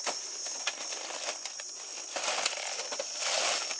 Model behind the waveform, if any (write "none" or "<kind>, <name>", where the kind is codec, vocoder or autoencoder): none